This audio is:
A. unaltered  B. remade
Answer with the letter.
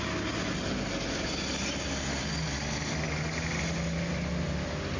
A